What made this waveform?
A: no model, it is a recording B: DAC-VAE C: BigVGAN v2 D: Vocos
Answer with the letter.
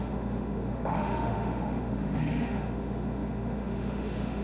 B